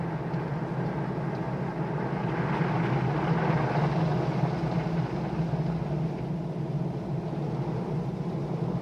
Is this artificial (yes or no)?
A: no